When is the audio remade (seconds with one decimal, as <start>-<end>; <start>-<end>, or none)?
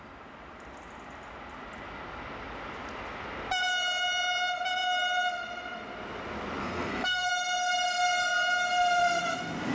6.6-7.3